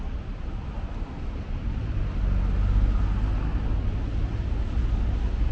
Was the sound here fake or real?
real